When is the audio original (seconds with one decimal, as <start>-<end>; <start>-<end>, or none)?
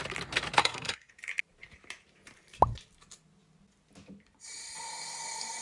0.0-0.6; 1.1-5.6